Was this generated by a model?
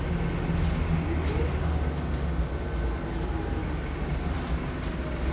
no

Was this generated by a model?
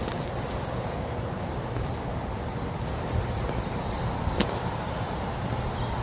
no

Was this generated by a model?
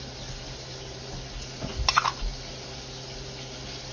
no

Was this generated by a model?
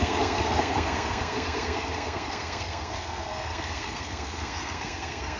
yes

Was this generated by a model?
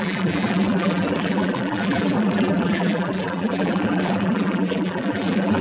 yes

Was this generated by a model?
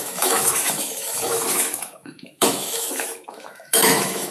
yes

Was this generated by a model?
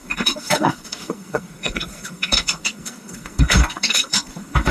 yes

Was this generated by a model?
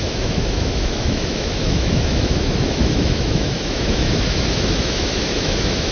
yes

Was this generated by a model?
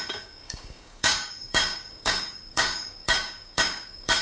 yes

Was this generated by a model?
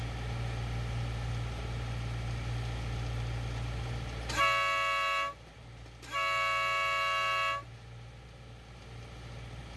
no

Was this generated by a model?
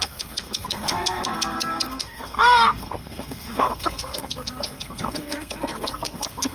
yes